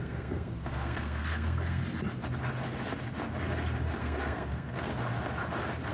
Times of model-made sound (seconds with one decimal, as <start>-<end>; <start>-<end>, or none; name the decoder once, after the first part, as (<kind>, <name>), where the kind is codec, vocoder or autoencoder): 0.0-1.8 (codec, SNAC); 4.0-4.9